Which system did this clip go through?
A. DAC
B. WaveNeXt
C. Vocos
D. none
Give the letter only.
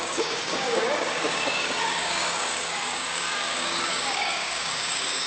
A